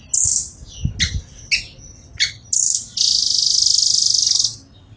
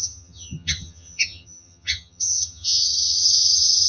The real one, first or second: first